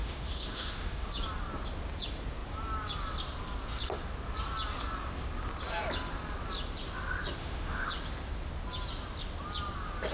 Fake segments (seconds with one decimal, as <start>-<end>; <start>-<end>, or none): 0.0-1.1; 7.4-7.9